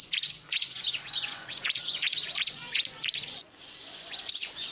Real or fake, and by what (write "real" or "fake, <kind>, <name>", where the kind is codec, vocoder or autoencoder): fake, vocoder, Vocos